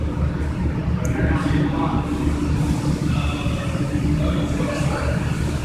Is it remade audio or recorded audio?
recorded